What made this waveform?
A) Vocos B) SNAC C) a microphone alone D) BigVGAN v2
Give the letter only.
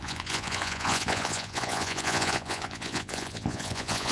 A